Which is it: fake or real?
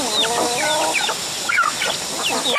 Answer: real